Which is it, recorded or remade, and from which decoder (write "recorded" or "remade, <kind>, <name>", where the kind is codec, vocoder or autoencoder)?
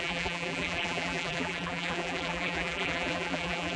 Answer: remade, vocoder, BigVGAN v2